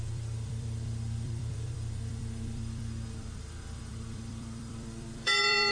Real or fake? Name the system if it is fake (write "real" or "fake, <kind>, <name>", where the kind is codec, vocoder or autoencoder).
fake, vocoder, BigVGAN v2